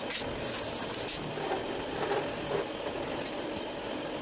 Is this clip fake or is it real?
real